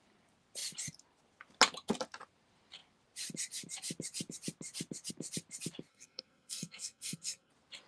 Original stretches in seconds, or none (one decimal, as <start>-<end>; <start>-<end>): 0.0-5.9; 7.5-7.9